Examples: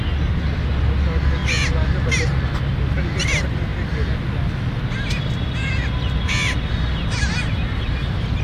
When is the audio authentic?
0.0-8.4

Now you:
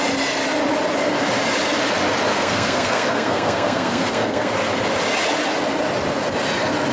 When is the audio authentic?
0.0-2.3; 4.5-6.9

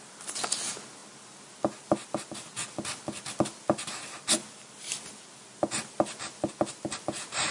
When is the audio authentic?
0.0-7.5